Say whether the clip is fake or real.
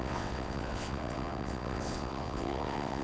fake